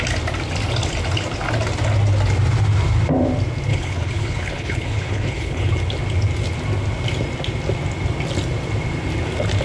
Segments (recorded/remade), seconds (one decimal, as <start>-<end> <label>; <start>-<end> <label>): 0.0-3.7 recorded; 3.7-5.7 remade; 5.7-9.6 recorded